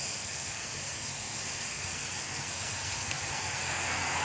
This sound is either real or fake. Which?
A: fake